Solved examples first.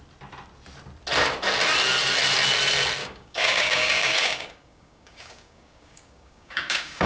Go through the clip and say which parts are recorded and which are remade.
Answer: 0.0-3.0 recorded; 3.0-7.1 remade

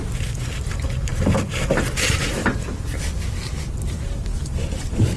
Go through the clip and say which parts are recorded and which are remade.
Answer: 0.0-2.4 remade; 2.4-3.0 recorded; 3.0-5.2 remade

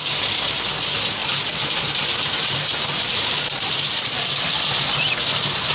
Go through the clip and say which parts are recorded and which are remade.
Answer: 0.0-1.2 recorded; 1.2-4.6 remade; 4.6-5.7 recorded

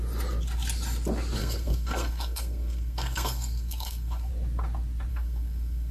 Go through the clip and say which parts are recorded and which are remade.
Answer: 0.0-1.4 recorded; 1.4-4.3 remade; 4.3-5.1 recorded; 5.1-5.9 remade

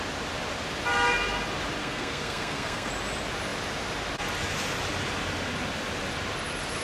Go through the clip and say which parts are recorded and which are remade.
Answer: 0.0-1.8 recorded; 1.8-2.9 remade; 2.9-6.8 recorded

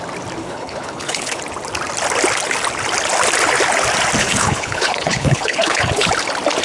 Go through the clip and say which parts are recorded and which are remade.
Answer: 0.0-0.4 recorded; 0.4-1.4 remade; 1.4-4.2 recorded; 4.2-6.1 remade; 6.1-6.6 recorded

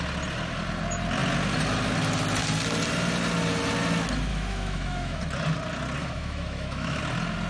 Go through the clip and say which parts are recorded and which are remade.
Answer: 0.0-4.3 recorded; 4.3-5.2 remade; 5.2-6.0 recorded; 6.0-7.0 remade; 7.0-7.5 recorded